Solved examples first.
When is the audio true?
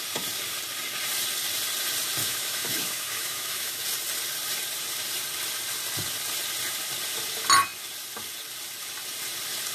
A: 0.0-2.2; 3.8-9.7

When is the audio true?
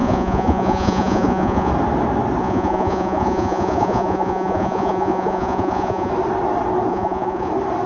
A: 1.7-2.4; 6.1-6.9; 7.5-7.9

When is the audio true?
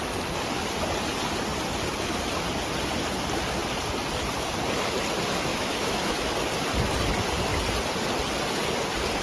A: 0.0-5.5; 6.3-9.2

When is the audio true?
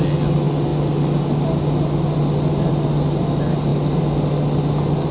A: 0.0-5.1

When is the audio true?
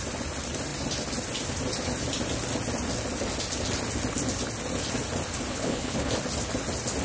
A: 0.0-5.5; 6.1-7.0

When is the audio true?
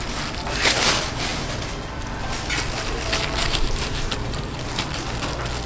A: 0.0-3.4; 5.0-5.7